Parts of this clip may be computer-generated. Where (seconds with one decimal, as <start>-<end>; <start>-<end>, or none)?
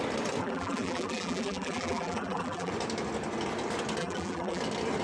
0.4-2.7; 4.0-4.6